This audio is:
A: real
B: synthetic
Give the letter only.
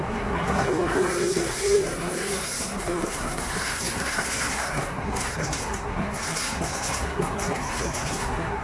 B